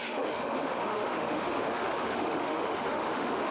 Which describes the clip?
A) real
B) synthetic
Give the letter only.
B